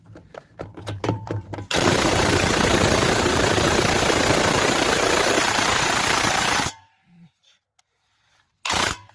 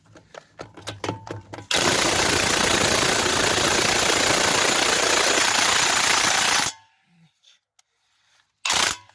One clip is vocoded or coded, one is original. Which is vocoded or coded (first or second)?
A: first